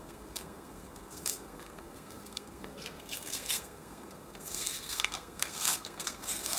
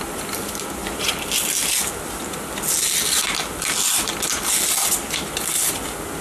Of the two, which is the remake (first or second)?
first